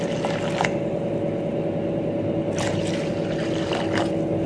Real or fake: real